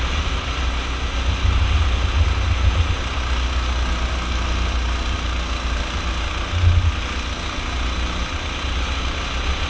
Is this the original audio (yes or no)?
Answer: yes